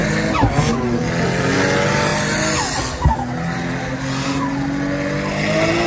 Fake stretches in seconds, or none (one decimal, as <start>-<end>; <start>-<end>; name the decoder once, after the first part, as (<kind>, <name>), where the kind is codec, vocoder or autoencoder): none